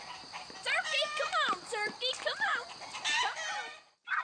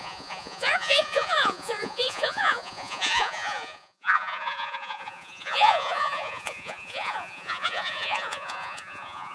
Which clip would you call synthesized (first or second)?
second